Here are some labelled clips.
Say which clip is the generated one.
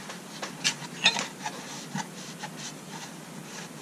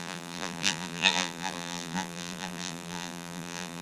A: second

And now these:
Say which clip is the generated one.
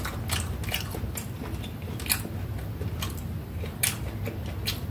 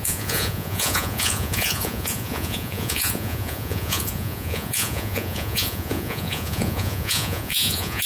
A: second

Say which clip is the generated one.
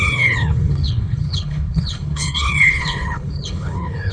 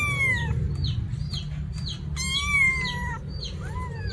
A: first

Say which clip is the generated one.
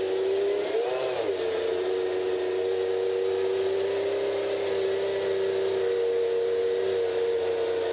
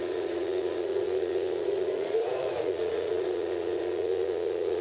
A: second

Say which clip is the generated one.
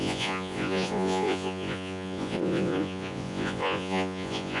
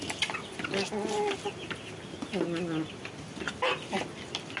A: first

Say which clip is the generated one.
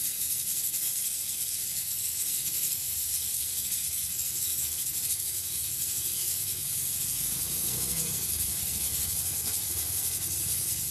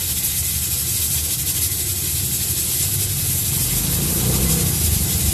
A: first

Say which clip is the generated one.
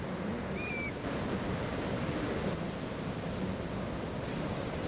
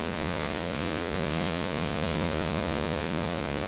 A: second